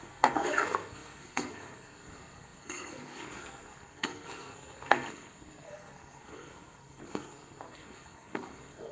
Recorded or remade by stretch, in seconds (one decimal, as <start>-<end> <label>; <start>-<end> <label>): 0.0-8.9 remade